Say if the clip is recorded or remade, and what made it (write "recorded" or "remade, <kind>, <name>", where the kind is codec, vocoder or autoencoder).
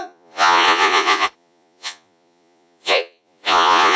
remade, vocoder, Vocos